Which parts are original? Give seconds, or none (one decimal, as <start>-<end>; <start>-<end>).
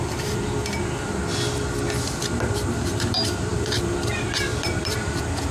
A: 1.2-2.2